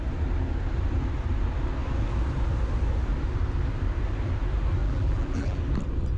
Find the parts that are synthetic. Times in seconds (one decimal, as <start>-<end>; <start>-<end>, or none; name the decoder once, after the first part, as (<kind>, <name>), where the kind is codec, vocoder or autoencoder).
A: 4.8-5.6 (vocoder, BigVGAN v2)